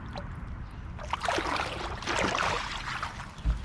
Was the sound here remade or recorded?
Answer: recorded